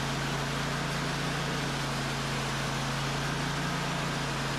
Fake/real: real